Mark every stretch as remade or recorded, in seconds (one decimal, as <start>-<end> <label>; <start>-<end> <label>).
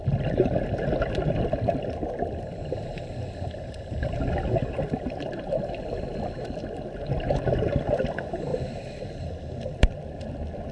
0.0-10.7 recorded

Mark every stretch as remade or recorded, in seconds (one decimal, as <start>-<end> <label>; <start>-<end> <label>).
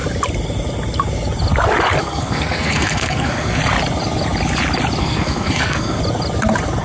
0.0-2.0 recorded; 2.0-3.6 remade; 3.6-5.0 recorded; 5.0-6.0 remade; 6.0-6.8 recorded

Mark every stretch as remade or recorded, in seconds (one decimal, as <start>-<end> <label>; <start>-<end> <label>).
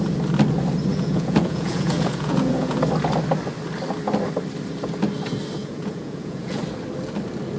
0.0-0.9 recorded; 0.9-2.8 remade; 2.8-5.6 recorded; 5.6-6.6 remade; 6.6-7.6 recorded